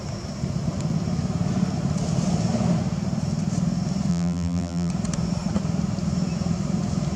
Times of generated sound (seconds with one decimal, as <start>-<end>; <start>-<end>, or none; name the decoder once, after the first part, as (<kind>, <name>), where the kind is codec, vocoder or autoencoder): 4.1-4.9 (vocoder, BigVGAN v2)